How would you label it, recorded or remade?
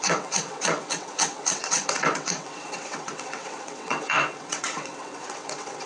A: remade